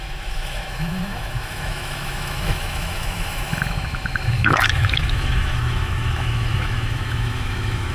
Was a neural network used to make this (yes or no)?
yes